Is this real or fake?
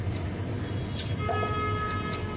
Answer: real